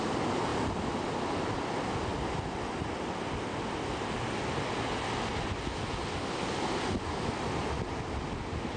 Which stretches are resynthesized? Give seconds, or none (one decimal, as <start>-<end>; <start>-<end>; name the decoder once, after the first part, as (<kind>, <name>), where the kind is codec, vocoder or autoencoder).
none